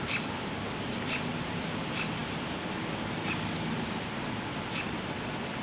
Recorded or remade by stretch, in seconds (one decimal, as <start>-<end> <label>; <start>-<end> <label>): 0.0-5.6 recorded